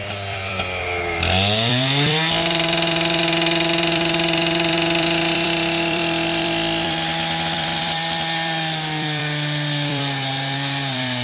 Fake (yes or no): yes